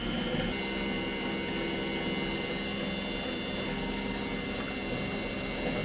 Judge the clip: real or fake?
real